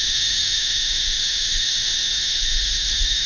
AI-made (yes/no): yes